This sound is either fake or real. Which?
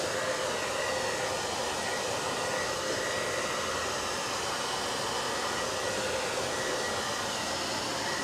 real